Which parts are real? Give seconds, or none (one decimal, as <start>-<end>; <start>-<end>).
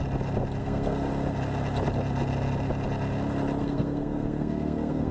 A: 0.0-0.6; 1.1-3.6